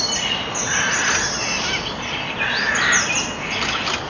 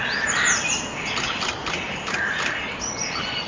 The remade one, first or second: second